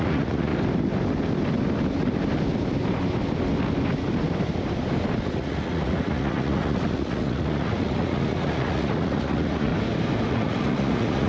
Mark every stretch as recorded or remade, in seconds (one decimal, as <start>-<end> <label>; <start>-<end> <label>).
0.0-0.5 remade; 0.5-5.2 recorded; 5.2-9.7 remade; 9.7-10.3 recorded; 10.3-11.3 remade